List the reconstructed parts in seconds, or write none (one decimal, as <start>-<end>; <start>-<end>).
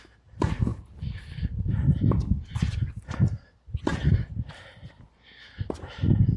none